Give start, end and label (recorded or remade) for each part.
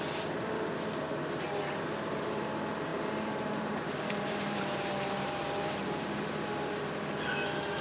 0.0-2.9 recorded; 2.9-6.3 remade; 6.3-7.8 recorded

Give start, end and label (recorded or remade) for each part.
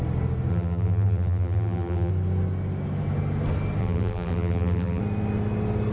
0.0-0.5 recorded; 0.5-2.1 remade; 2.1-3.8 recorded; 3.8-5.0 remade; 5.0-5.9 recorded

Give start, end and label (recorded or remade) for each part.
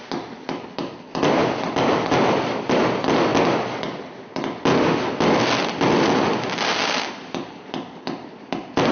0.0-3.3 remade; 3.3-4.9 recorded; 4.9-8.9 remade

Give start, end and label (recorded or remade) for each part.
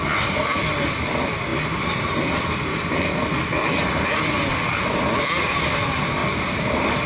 0.0-6.2 recorded; 6.2-7.1 remade